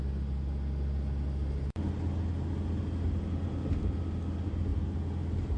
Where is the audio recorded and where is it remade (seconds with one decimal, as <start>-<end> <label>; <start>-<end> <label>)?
0.0-5.6 recorded